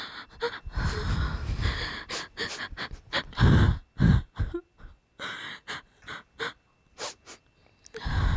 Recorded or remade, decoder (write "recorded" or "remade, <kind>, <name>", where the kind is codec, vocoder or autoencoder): recorded